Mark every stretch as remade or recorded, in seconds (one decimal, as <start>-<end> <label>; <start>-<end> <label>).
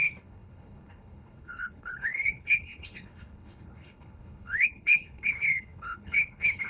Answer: 0.0-6.7 remade